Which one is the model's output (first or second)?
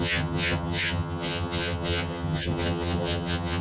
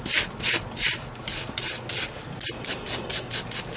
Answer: first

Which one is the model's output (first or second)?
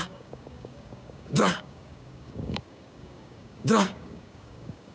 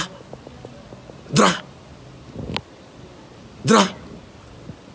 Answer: first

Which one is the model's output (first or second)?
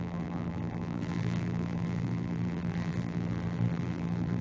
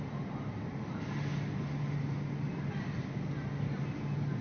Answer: first